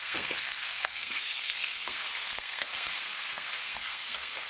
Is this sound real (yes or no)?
no